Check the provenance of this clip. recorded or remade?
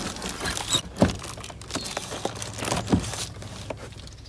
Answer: recorded